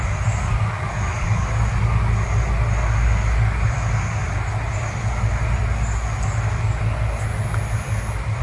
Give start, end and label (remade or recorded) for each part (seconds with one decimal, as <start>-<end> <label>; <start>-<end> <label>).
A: 0.0-8.4 recorded